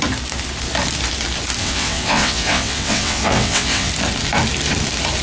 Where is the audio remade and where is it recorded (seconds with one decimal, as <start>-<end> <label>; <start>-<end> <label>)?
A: 0.0-1.6 recorded; 1.6-3.9 remade; 3.9-5.2 recorded